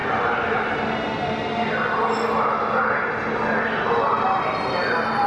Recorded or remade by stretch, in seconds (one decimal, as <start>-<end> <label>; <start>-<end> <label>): 0.0-5.3 recorded

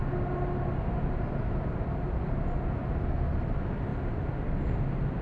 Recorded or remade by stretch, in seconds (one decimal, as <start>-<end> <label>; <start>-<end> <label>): 0.0-5.2 recorded

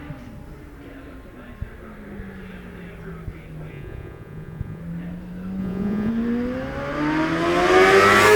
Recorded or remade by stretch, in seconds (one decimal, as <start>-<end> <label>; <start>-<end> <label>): 0.0-3.7 recorded; 3.7-4.8 remade; 4.8-5.6 recorded; 5.6-6.1 remade; 6.1-8.4 recorded

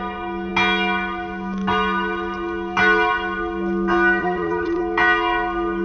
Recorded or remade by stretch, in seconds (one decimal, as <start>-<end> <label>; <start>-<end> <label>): 0.0-4.2 recorded; 4.2-4.8 remade; 4.8-5.8 recorded

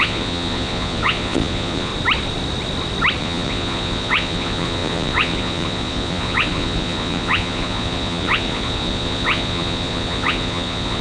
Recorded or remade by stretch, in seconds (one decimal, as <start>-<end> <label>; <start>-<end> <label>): 0.0-1.9 remade; 1.9-3.2 recorded; 3.2-11.0 remade

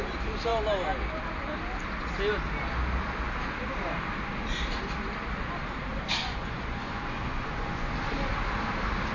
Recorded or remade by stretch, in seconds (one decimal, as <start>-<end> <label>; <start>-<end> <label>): 0.0-6.2 recorded; 6.2-7.9 remade; 7.9-9.1 recorded

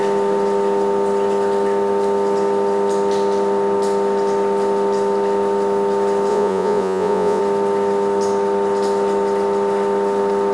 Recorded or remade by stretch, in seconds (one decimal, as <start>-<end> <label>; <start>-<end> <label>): 0.0-6.3 recorded; 6.3-7.4 remade; 7.4-10.5 recorded

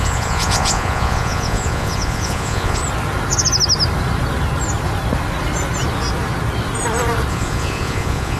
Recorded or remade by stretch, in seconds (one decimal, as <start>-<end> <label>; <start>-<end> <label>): 0.0-2.8 remade; 2.8-7.3 recorded; 7.3-8.4 remade